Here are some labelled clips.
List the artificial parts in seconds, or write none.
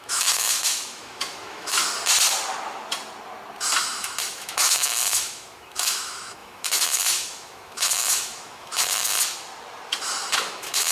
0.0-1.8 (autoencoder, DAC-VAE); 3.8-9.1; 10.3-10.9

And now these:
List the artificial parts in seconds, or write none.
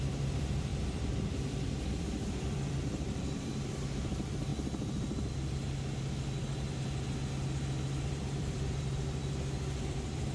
0.0-4.5 (vocoder, BigVGAN v2); 8.1-9.2; 9.9-10.3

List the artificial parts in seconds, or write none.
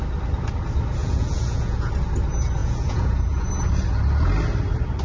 1.0-1.9 (vocoder, Vocos); 2.6-3.5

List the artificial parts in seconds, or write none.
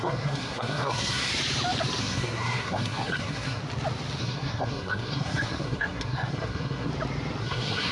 0.0-1.3 (codec, SNAC); 2.0-3.6; 4.2-6.9; 7.4-7.9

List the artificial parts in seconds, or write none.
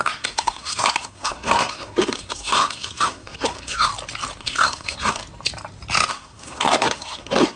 0.0-3.9 (codec, SNAC); 4.4-5.2; 6.1-7.6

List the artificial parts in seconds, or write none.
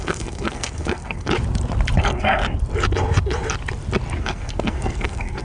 0.0-1.3 (codec, SNAC); 2.0-2.4; 4.2-5.4